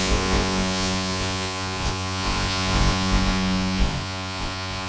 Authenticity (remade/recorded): remade